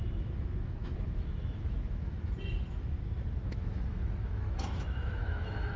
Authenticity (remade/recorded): remade